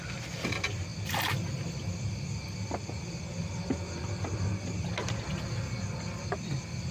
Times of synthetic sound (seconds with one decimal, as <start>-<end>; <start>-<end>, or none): none